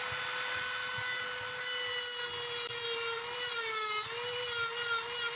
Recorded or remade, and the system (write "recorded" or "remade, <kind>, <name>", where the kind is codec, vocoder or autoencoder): recorded